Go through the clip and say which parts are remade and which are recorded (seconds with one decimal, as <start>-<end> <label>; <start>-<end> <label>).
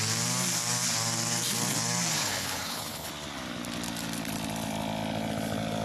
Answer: 0.0-2.1 recorded; 2.1-3.1 remade; 3.1-5.8 recorded